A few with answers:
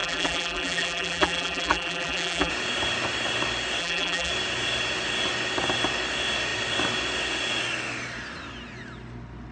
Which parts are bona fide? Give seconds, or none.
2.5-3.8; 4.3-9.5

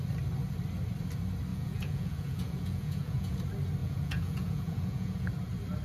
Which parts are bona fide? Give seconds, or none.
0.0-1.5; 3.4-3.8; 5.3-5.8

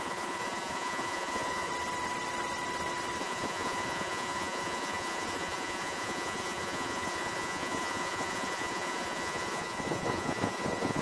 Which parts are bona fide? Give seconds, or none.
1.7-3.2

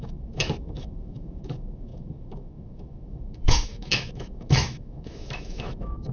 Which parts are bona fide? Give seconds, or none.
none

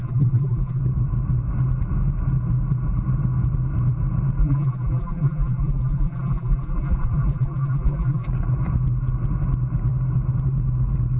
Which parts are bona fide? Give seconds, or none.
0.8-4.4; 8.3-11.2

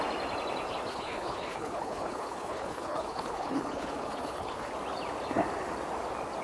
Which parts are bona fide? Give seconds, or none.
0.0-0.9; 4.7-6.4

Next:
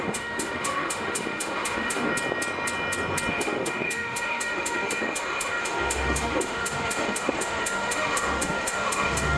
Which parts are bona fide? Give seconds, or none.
2.1-3.3

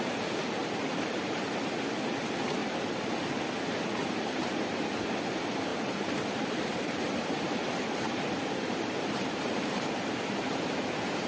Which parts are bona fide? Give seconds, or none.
0.0-0.6; 1.6-2.6; 3.4-4.0; 4.7-5.7; 10.6-11.3